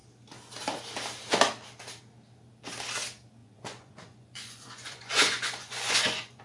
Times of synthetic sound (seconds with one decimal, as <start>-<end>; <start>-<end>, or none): 3.4-6.4